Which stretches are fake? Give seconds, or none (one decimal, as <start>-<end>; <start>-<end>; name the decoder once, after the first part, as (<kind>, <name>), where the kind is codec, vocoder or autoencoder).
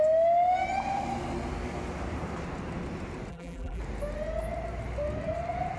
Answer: 3.3-3.8 (vocoder, BigVGAN v2)